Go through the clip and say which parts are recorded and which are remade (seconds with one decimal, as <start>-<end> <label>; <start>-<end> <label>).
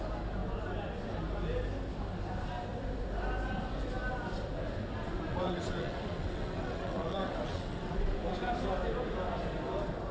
0.0-5.3 recorded; 5.3-7.9 remade; 7.9-10.1 recorded